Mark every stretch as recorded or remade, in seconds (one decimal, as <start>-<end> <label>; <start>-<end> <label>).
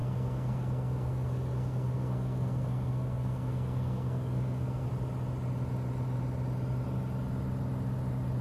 0.0-4.9 remade; 4.9-8.4 recorded